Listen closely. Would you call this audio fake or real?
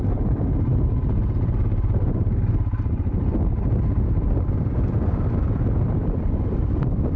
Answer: real